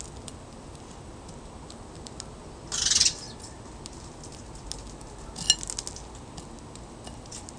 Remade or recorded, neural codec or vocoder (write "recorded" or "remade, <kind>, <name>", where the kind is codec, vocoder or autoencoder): recorded